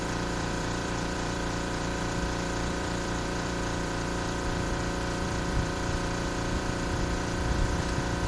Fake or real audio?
fake